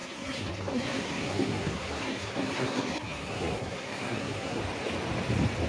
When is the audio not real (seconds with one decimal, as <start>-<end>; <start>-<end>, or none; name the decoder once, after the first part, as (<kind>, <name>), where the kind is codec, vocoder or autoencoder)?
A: 0.0-4.6 (codec, SNAC)